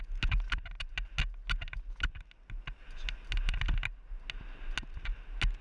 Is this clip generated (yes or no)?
no